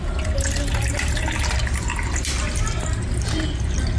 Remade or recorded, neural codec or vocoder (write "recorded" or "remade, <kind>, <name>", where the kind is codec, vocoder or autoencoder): recorded